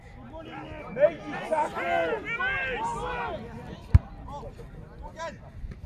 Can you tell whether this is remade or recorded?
recorded